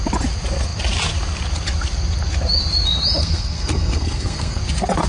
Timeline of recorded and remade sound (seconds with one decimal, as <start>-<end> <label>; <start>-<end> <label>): 0.0-3.2 recorded; 3.2-4.6 remade; 4.6-5.1 recorded